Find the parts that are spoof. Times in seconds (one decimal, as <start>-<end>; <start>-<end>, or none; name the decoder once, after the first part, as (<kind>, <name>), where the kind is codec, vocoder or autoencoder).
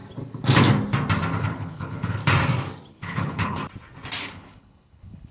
1.4-2.2 (codec, HILCodec); 2.9-3.6; 4.2-5.3